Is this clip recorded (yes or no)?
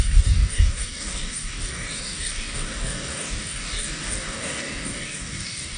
no